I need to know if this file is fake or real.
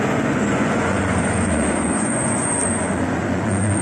fake